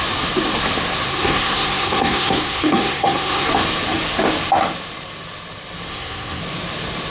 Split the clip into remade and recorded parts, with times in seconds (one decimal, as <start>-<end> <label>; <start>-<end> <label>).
0.0-1.1 recorded; 1.1-3.5 remade; 3.5-5.9 recorded; 5.9-6.4 remade; 6.4-7.1 recorded